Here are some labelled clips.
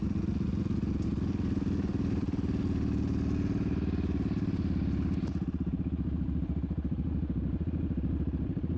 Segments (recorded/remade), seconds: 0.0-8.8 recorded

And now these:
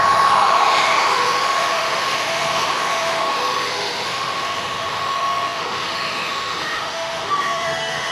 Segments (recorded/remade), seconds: 0.0-8.1 remade

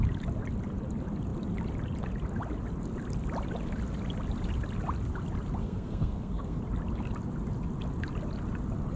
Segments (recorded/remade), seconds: 0.0-5.6 recorded; 5.6-6.6 remade; 6.6-9.0 recorded